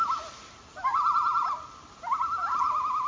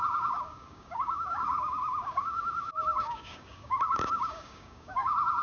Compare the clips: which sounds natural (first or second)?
first